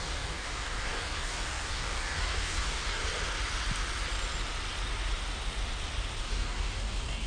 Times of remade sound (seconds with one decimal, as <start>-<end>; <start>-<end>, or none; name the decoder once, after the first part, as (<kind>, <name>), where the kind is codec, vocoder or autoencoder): 0.0-3.0 (codec, DAC); 6.2-7.3